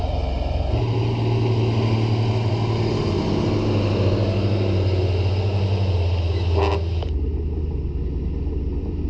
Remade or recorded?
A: recorded